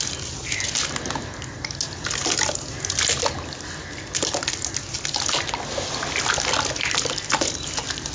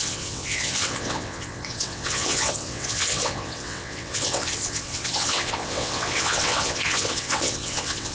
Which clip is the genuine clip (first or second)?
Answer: first